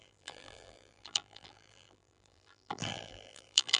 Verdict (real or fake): fake